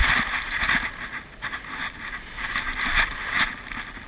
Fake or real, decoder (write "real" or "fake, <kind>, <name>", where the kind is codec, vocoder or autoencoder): real